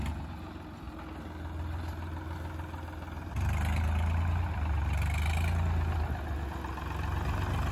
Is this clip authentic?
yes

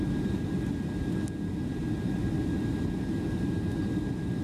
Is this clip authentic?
yes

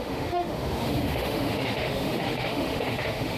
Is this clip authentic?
no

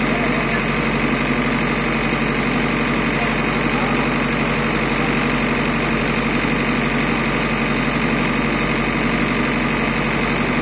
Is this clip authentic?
yes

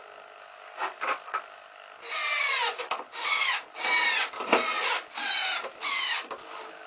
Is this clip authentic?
yes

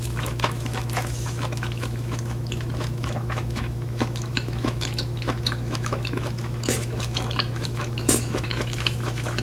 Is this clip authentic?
no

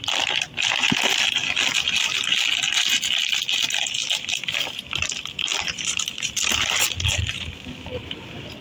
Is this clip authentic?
yes